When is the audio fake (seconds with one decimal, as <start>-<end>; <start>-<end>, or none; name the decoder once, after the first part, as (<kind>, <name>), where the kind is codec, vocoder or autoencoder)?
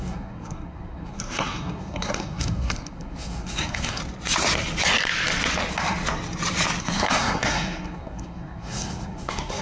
0.0-4.0 (codec, SNAC); 6.8-9.6